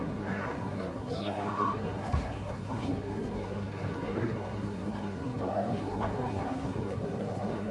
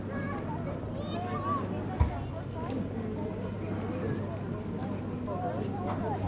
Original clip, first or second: second